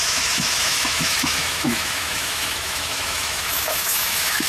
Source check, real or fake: fake